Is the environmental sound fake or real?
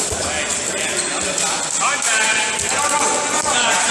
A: real